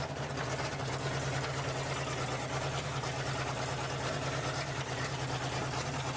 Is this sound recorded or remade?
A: recorded